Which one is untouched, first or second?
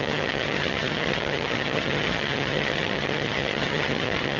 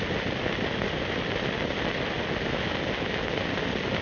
second